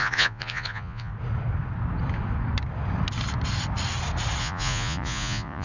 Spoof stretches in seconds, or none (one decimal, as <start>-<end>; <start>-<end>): 0.0-1.1; 4.4-5.6